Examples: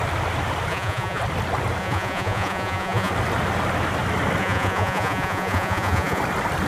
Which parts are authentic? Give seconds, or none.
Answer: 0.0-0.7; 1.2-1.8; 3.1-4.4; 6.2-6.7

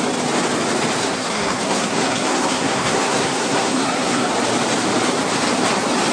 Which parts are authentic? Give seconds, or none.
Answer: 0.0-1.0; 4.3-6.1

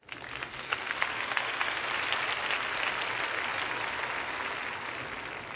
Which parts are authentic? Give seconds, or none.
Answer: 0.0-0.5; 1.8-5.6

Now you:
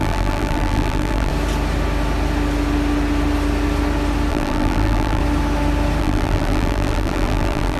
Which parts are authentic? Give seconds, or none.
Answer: 1.3-4.3; 5.2-6.0